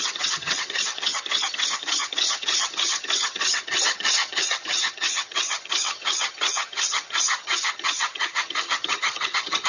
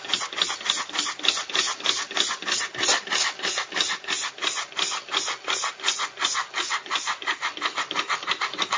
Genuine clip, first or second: second